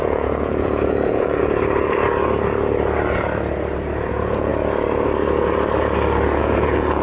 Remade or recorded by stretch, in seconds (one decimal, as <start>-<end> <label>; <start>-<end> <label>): 0.0-1.4 remade; 1.4-4.1 recorded; 4.1-4.5 remade; 4.5-6.4 recorded; 6.4-7.0 remade